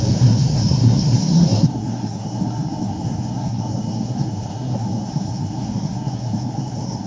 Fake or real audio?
fake